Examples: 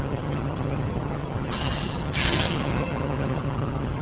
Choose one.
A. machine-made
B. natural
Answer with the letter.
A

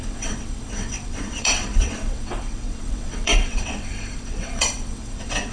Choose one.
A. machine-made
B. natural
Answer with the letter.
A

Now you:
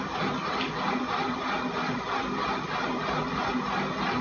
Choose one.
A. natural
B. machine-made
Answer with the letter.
A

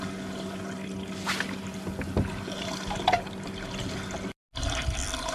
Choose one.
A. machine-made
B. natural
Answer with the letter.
B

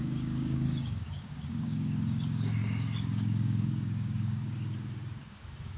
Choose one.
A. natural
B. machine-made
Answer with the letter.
B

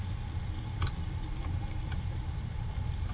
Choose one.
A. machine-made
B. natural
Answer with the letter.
A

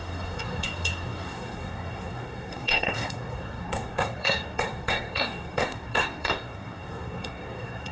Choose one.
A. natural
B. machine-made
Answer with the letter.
B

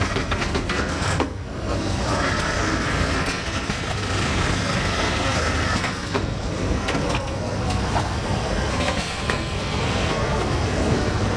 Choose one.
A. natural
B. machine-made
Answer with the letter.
B